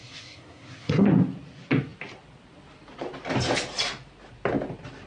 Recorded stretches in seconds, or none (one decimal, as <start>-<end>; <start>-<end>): 1.1-5.1